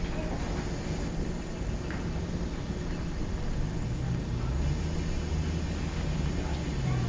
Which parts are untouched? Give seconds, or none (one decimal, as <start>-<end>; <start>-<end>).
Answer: 0.0-7.1